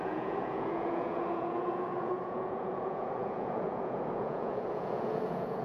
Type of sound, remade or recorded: remade